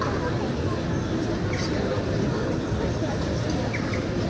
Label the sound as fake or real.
real